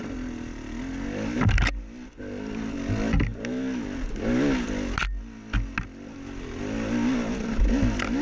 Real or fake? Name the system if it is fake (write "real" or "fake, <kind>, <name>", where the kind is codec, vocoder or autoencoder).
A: real